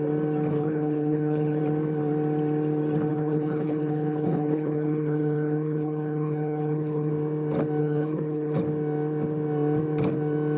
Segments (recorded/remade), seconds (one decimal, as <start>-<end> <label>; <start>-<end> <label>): 0.0-0.5 recorded; 0.5-1.6 remade; 1.6-3.1 recorded; 3.1-7.1 remade; 7.1-7.8 recorded; 7.8-8.6 remade; 8.6-10.6 recorded